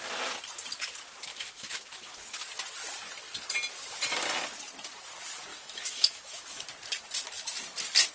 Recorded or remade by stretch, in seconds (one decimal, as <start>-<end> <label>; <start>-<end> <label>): 0.0-1.3 recorded; 1.3-2.1 remade; 2.1-5.5 recorded; 5.5-6.6 remade; 6.6-8.1 recorded